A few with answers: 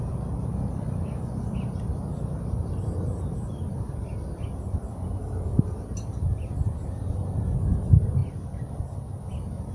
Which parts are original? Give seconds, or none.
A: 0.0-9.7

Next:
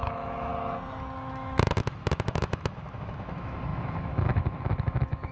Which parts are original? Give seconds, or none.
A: 0.5-1.3